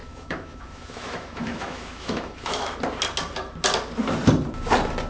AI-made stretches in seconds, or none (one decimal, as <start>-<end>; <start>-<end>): 0.0-2.7